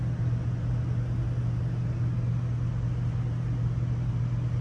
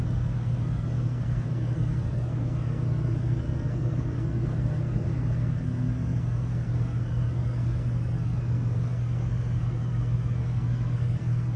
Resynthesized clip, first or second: second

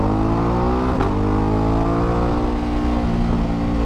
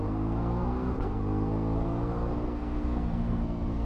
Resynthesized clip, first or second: second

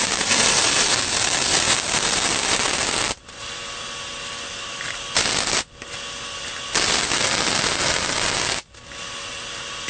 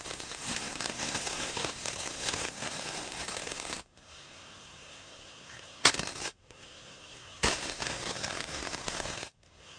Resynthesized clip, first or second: second